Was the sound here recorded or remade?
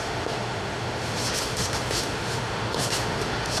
remade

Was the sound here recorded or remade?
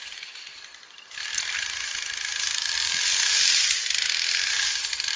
recorded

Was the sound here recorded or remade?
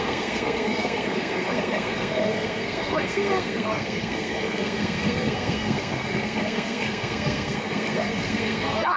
remade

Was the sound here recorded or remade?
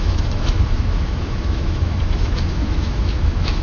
remade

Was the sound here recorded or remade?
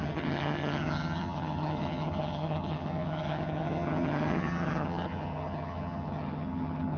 remade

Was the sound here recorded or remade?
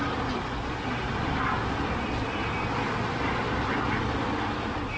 recorded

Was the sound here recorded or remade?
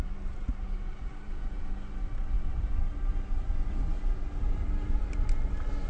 recorded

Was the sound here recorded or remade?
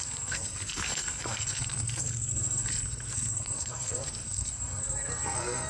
remade